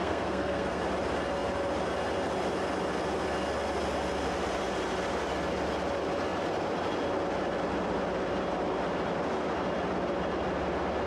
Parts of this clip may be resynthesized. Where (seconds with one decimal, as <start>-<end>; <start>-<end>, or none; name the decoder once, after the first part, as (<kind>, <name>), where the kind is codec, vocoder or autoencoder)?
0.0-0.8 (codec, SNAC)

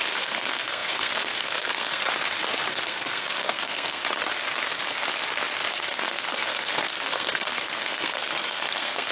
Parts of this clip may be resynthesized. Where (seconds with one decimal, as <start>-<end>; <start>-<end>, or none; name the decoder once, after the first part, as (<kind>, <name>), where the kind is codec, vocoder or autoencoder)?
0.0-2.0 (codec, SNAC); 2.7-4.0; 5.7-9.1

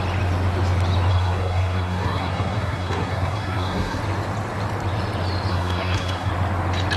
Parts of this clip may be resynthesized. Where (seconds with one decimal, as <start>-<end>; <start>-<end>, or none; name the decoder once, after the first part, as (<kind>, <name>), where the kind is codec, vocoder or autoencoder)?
1.1-4.0 (codec, SNAC); 5.5-6.3

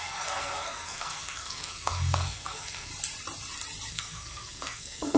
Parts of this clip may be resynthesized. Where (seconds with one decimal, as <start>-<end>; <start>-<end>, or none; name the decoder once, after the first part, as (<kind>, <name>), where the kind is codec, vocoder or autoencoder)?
0.0-2.9 (codec, SNAC); 3.9-5.2

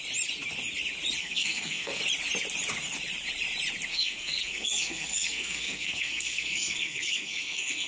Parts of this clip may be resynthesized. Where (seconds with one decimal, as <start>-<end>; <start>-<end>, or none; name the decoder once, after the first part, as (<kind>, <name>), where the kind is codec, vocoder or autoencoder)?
1.2-2.0 (codec, SNAC); 3.9-7.9

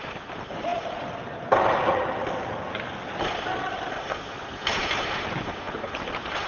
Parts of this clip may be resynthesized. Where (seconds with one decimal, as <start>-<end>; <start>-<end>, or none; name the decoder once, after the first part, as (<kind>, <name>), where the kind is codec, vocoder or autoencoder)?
none